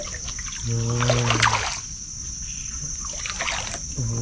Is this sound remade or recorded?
recorded